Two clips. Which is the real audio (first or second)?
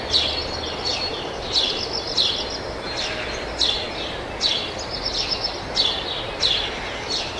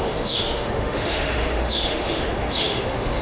first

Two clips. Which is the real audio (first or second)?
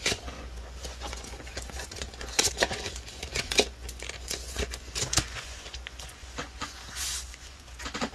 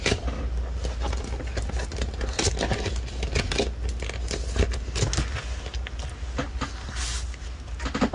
second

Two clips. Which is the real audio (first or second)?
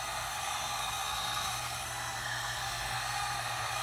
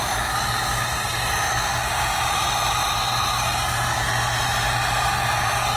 second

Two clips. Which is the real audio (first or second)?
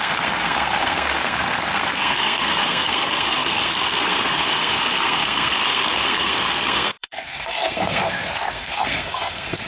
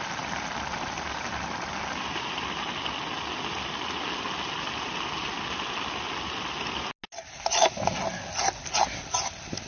second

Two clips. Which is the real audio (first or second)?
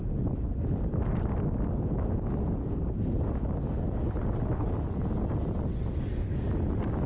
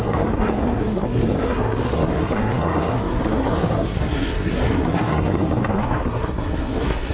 first